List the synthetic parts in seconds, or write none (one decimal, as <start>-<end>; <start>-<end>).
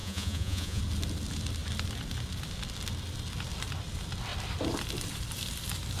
0.0-0.8